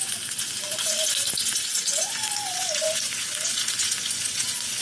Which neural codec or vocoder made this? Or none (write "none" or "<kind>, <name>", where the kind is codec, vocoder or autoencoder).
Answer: vocoder, Vocos